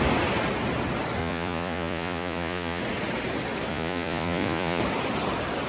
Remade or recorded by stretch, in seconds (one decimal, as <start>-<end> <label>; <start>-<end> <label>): 0.0-1.2 recorded; 1.2-2.8 remade; 2.8-3.7 recorded; 3.7-4.8 remade; 4.8-5.7 recorded